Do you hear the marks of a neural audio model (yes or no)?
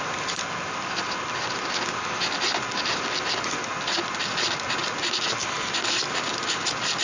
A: no